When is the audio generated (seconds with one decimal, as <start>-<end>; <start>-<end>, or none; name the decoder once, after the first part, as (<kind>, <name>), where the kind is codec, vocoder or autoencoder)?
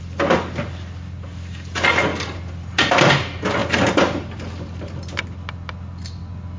none